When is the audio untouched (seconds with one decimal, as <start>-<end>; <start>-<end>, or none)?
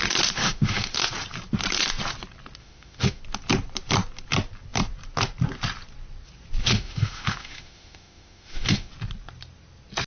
0.0-0.4; 1.0-2.6; 3.2-6.6; 8.9-10.1